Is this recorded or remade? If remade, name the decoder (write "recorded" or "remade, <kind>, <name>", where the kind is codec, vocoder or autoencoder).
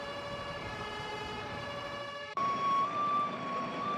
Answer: remade, vocoder, BigVGAN v2